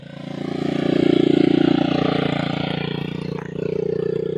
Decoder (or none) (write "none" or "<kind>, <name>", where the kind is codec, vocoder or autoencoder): none